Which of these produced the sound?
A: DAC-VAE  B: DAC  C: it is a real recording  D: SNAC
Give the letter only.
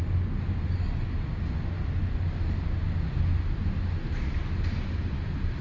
C